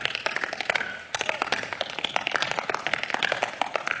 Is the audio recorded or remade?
recorded